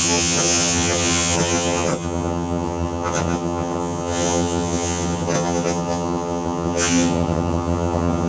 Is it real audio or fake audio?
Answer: fake